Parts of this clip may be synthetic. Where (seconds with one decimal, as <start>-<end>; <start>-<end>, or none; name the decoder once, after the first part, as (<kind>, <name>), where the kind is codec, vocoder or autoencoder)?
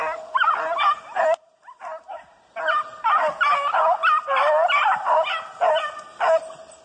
0.9-1.7 (vocoder, BigVGAN v2)